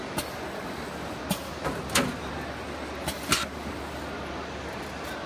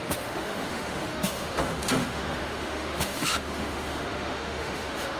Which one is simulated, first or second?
second